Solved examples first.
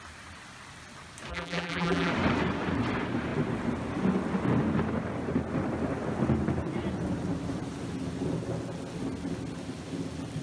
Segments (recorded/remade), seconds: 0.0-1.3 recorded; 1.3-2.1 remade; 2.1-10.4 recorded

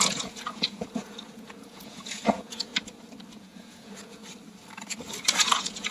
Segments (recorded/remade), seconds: 0.0-2.7 remade; 2.7-3.3 recorded; 3.3-4.2 remade; 4.2-5.3 recorded; 5.3-5.9 remade

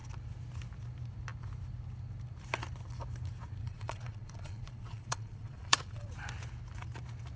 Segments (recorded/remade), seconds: 0.0-3.6 recorded; 3.6-6.1 remade; 6.1-7.4 recorded

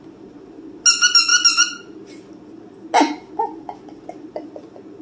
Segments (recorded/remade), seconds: 0.0-5.0 recorded

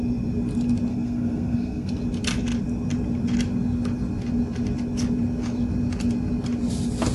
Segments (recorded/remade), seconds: 0.0-0.9 recorded; 0.9-1.9 remade; 1.9-7.1 recorded

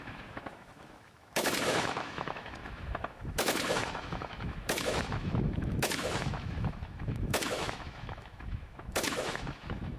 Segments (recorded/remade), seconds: 0.0-10.0 remade